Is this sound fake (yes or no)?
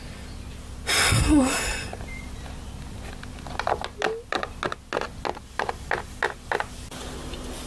no